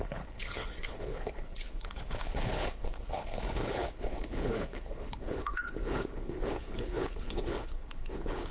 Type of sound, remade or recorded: remade